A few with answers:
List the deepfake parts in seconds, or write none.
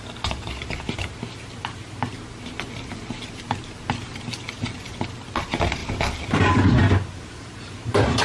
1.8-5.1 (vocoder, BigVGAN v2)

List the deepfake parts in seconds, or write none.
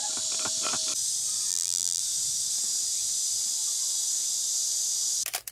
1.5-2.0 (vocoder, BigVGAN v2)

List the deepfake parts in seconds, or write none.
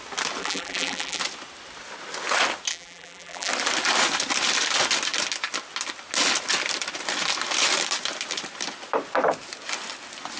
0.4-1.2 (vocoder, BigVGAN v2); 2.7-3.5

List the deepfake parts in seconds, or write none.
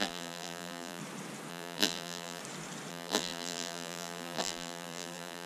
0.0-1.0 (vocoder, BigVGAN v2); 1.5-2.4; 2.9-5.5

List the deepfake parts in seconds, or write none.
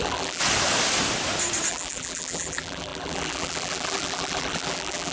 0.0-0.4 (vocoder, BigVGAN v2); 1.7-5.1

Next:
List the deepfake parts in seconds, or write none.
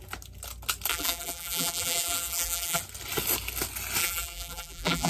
0.9-2.8 (vocoder, BigVGAN v2); 4.0-5.1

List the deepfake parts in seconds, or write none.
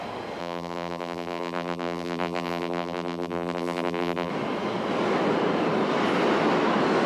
0.4-4.3 (vocoder, BigVGAN v2)